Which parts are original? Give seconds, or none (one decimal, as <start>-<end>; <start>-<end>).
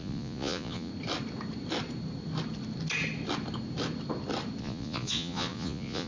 0.9-4.6